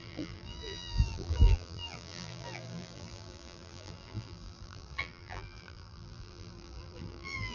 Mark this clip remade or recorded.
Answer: remade